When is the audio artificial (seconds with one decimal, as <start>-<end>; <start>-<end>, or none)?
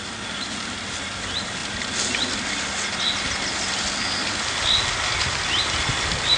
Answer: none